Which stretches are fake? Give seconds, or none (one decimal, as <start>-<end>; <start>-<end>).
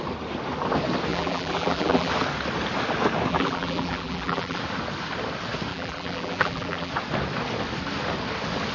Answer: 1.1-2.1; 3.3-4.6; 5.7-6.9